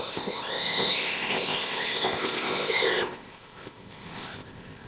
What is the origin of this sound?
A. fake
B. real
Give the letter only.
A